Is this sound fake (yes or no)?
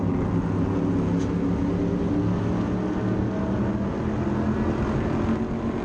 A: no